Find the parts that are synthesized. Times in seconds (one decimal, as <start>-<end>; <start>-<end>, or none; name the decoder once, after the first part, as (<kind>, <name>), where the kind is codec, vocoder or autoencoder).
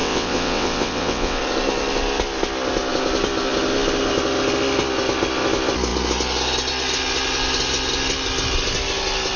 0.0-1.4 (vocoder, WaveNeXt)